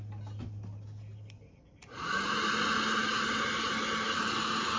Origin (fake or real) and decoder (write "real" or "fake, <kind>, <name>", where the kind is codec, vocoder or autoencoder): real